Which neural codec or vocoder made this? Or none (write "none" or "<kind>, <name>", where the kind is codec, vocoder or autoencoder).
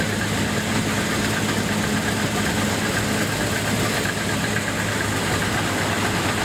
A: none